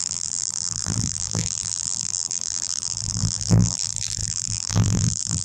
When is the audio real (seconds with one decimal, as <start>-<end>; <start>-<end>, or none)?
none